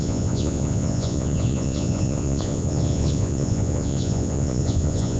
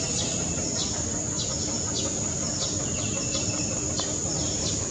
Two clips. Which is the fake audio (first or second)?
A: first